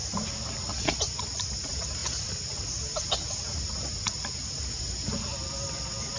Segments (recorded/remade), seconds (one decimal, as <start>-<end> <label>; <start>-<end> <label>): 0.0-6.2 recorded